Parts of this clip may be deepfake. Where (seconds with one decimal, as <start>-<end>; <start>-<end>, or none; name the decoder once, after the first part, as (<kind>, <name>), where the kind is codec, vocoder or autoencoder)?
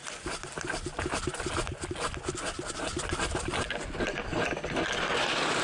none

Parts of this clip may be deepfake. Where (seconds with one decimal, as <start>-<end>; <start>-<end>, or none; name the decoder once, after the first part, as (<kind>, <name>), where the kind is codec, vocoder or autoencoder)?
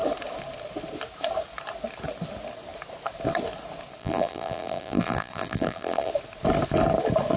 4.0-6.1 (vocoder, BigVGAN v2)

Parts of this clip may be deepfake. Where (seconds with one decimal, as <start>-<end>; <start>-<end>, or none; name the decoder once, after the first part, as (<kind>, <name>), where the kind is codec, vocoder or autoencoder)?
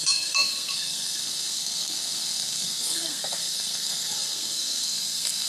0.0-5.5 (codec, SNAC)